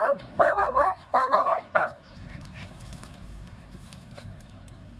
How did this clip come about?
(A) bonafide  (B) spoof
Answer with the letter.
B